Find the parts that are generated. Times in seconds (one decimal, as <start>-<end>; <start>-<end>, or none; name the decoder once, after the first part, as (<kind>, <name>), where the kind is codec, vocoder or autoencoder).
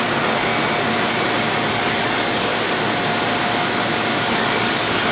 0.0-0.5 (codec, DAC); 1.7-2.5; 4.3-5.1